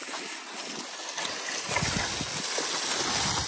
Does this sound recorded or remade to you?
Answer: recorded